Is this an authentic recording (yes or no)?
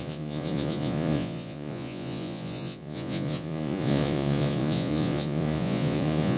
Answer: no